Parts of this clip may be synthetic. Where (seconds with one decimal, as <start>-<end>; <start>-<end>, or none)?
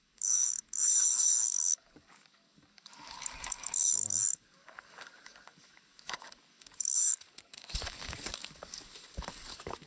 0.0-9.9